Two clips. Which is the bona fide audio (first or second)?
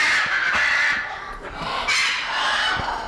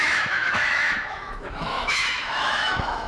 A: first